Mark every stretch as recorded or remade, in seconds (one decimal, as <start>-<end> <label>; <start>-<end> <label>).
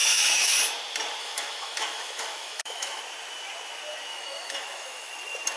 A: 0.0-0.5 remade; 0.5-1.2 recorded; 1.2-3.0 remade; 3.0-4.1 recorded; 4.1-5.1 remade; 5.1-5.6 recorded